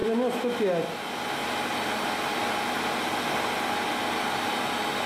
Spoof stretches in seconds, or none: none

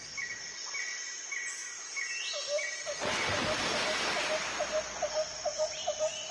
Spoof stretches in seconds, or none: none

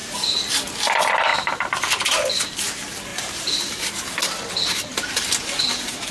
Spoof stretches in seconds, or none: 0.0-0.7; 1.3-2.5; 3.1-4.2